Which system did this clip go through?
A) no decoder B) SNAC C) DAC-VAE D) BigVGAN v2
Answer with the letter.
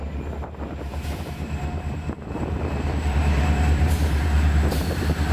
D